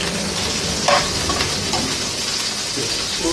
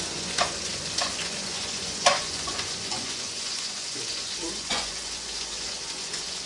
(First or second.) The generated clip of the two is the second